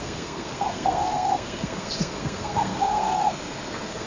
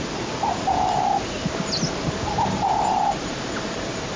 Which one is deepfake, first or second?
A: first